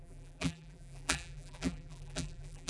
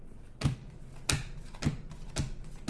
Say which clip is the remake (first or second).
first